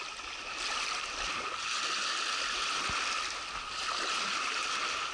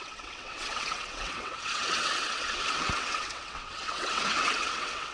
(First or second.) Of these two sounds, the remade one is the second